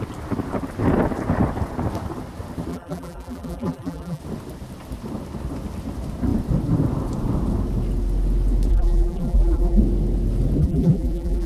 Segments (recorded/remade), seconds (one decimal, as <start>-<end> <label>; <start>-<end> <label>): 0.0-2.7 recorded; 2.7-4.2 remade; 4.2-8.7 recorded; 8.7-9.8 remade; 9.8-10.6 recorded; 10.6-11.5 remade